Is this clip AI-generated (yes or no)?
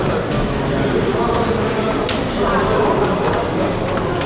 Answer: no